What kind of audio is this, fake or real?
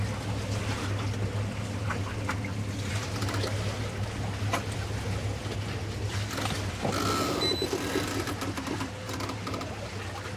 real